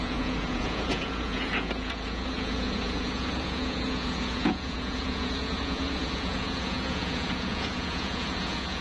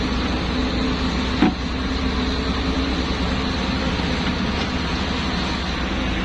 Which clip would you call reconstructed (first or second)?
first